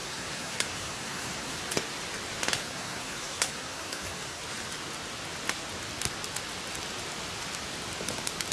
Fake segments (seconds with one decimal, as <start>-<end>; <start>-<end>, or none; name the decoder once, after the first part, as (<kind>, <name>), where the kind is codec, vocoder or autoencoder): 0.0-1.6 (codec, SNAC); 2.6-4.4